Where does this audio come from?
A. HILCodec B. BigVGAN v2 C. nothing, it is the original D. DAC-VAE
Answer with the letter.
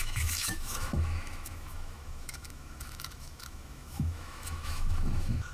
D